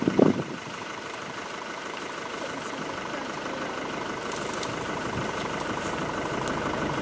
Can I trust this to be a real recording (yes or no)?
no